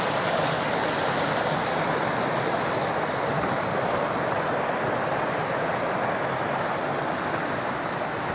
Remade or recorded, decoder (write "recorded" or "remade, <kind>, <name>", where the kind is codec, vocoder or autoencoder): recorded